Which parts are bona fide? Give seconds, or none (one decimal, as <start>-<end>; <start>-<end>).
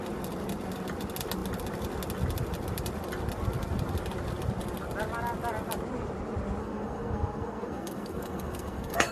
0.0-6.6